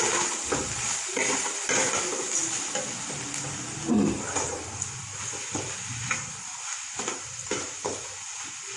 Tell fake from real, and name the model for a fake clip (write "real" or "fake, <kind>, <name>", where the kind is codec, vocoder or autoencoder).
real